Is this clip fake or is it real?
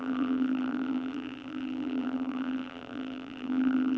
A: fake